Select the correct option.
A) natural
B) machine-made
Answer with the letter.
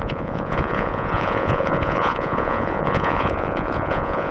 B